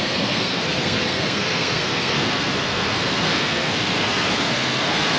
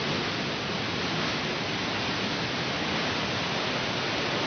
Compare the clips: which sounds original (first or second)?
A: second